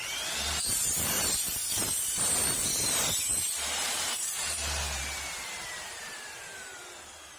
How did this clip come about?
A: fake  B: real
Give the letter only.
A